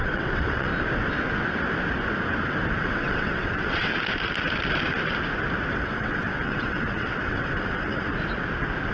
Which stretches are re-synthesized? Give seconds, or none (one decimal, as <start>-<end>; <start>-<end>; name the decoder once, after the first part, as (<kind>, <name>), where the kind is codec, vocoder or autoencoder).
0.0-0.7 (vocoder, WaveNeXt); 2.8-3.9; 5.7-8.1